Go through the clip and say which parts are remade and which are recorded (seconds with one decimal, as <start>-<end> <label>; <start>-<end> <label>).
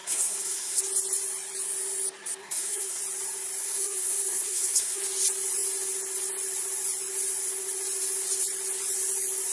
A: 0.0-0.8 remade; 0.8-2.4 recorded; 2.4-3.0 remade; 3.0-3.6 recorded; 3.6-5.0 remade; 5.0-9.5 recorded